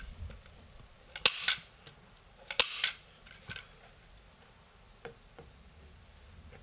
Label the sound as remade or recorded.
recorded